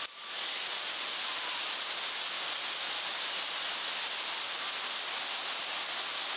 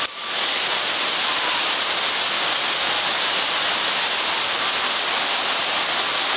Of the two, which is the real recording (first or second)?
first